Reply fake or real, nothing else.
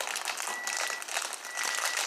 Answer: real